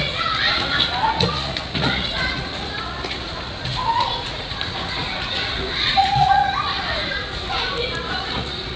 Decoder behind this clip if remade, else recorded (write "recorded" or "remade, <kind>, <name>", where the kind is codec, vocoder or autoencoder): remade, vocoder, Vocos